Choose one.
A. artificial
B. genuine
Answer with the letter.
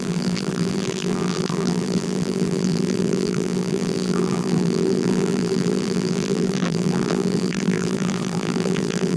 A